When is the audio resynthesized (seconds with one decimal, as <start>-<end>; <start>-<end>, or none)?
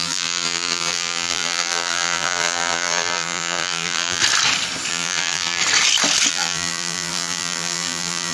0.0-4.2; 4.9-5.6; 6.3-8.3